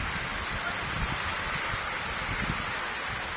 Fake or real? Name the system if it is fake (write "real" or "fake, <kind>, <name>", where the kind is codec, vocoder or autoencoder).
real